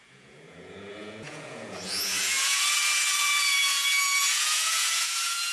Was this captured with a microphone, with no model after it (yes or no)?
no